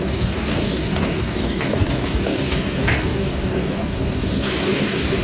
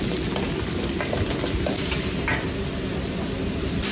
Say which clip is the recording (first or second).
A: second